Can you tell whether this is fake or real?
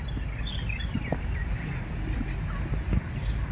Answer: real